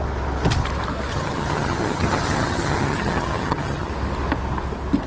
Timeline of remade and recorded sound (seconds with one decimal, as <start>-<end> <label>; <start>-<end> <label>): 0.0-1.1 recorded; 1.1-3.9 remade; 3.9-5.1 recorded